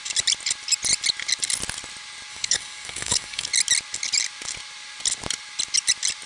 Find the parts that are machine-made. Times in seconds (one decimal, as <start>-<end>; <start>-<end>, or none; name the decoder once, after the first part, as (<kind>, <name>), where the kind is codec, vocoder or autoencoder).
2.3-3.5 (codec, DAC)